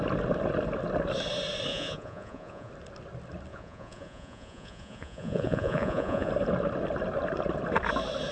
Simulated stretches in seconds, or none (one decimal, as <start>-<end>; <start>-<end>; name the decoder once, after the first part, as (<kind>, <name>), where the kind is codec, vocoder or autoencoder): 1.7-2.7 (vocoder, Vocos); 3.5-6.3